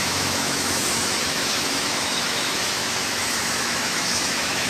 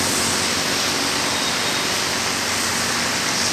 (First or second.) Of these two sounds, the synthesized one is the first